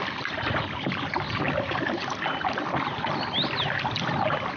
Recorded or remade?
recorded